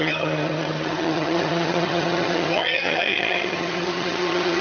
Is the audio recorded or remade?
remade